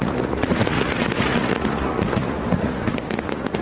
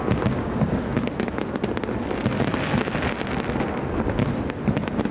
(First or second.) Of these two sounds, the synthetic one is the first